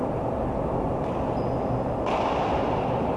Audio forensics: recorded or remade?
recorded